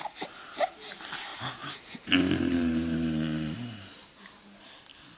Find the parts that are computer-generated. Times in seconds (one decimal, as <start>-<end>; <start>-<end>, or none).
1.3-4.4